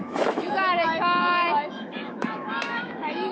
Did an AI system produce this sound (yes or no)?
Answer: yes